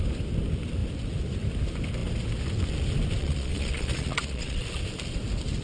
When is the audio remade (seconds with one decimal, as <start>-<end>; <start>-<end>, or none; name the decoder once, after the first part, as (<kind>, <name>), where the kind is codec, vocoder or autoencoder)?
3.2-4.6 (vocoder, Vocos)